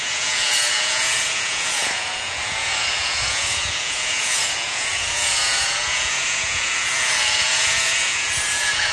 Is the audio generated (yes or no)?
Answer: yes